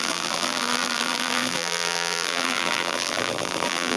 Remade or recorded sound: remade